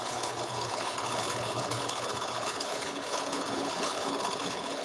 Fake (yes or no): yes